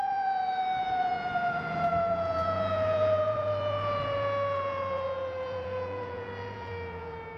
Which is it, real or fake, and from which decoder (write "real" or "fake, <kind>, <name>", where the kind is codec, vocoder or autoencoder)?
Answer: fake, vocoder, Vocos